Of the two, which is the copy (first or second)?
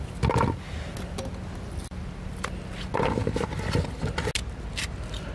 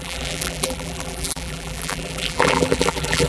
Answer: second